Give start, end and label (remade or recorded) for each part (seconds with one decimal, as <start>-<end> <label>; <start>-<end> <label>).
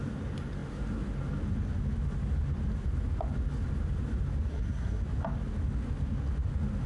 0.0-4.5 recorded; 4.5-5.0 remade; 5.0-6.9 recorded